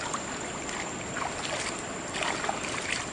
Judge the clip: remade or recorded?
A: recorded